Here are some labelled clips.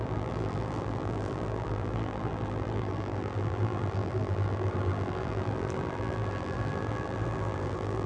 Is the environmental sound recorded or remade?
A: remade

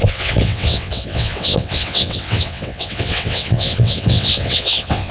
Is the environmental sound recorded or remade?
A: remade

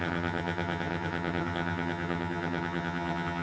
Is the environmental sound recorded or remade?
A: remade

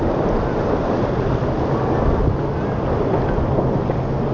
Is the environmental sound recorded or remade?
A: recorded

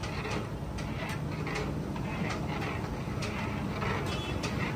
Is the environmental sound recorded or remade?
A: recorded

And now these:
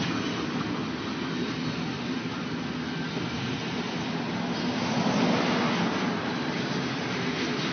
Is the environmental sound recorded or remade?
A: recorded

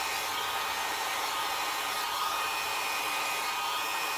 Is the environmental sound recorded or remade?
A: recorded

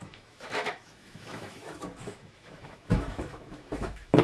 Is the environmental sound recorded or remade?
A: remade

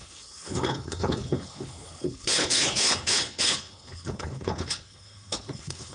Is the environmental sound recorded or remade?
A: remade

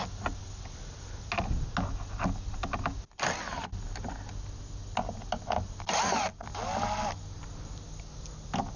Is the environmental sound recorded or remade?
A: recorded